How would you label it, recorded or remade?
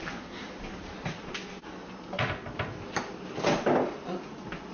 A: recorded